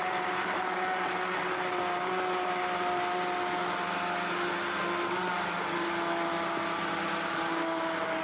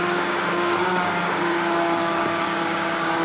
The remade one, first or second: second